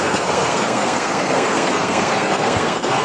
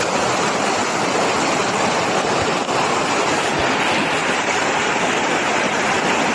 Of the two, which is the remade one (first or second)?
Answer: first